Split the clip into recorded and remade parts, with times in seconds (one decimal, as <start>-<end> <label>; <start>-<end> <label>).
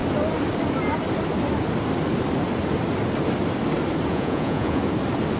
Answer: 0.0-4.1 recorded; 4.1-4.8 remade; 4.8-5.4 recorded